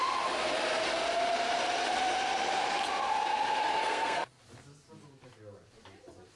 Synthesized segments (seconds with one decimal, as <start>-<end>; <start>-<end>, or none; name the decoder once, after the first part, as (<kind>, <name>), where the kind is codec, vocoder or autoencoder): 3.8-4.4 (codec, SNAC)